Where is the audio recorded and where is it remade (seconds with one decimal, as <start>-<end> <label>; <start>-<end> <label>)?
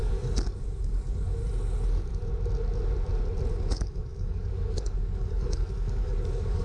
0.0-1.4 remade; 1.4-3.5 recorded; 3.5-6.6 remade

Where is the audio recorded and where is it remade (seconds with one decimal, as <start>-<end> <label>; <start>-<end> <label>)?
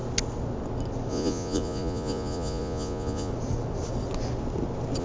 0.0-1.1 recorded; 1.1-3.3 remade; 3.3-5.0 recorded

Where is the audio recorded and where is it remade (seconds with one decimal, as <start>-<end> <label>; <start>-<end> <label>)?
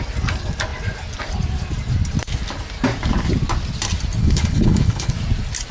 0.0-4.2 recorded; 4.2-5.1 remade; 5.1-5.7 recorded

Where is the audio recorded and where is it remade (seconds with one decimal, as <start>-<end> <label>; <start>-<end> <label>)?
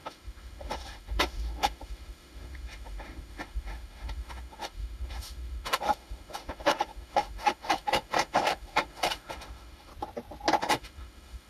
0.0-9.9 remade; 9.9-10.6 recorded; 10.6-11.5 remade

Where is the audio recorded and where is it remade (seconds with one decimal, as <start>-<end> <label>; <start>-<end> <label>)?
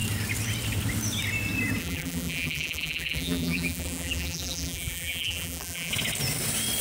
0.0-1.8 recorded; 1.8-5.9 remade; 5.9-6.8 recorded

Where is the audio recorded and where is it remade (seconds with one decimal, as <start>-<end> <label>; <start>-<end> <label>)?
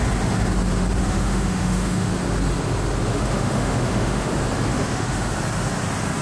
0.0-1.0 recorded; 1.0-2.1 remade; 2.1-3.1 recorded; 3.1-4.3 remade; 4.3-4.7 recorded; 4.7-5.3 remade; 5.3-6.2 recorded